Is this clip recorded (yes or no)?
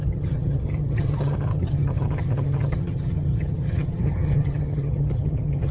no